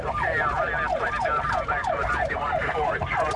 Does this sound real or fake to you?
real